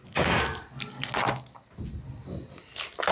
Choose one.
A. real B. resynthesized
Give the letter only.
A